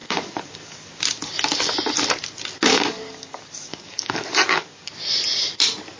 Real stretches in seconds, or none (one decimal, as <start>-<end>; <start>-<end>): 1.0-2.7; 4.9-6.0